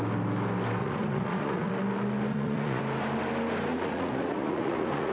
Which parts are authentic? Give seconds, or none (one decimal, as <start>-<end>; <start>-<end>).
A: 0.0-0.8; 1.7-2.3; 2.8-3.7